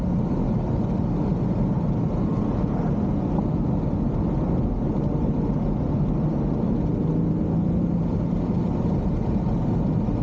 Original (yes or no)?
yes